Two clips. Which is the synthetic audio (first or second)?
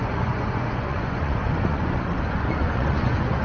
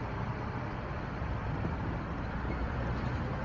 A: first